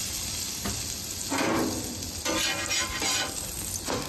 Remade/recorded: recorded